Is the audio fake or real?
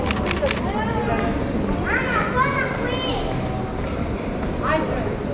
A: real